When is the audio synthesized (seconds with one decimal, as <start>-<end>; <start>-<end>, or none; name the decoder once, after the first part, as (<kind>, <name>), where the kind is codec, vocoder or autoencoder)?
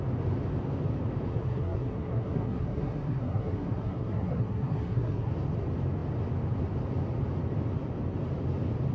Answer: 1.3-5.3 (codec, SNAC)